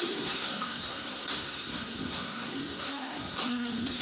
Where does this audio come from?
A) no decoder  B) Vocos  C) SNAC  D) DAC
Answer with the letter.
C